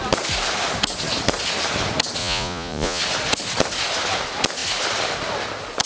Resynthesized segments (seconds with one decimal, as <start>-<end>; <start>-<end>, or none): 2.2-3.0